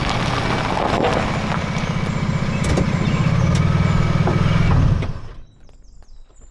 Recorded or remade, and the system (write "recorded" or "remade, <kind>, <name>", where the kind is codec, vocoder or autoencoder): recorded